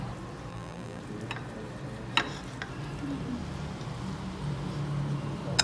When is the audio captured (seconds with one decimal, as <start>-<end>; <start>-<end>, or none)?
0.0-0.5; 1.0-5.6